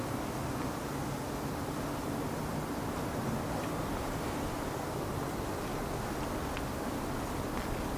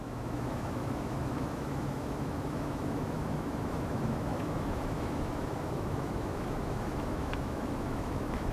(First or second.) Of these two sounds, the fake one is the second